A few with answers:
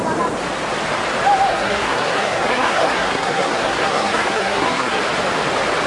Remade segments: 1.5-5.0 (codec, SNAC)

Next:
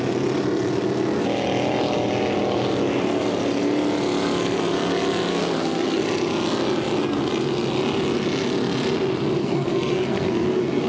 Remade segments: 5.3-6.0 (codec, SNAC); 9.4-10.9